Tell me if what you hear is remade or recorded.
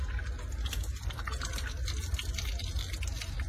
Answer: recorded